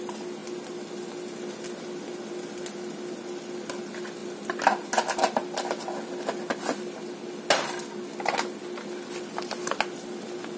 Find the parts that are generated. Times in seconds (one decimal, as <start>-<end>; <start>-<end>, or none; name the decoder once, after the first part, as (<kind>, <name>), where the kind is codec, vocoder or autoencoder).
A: none